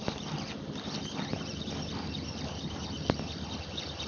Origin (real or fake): real